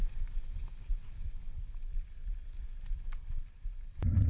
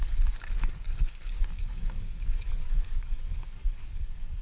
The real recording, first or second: first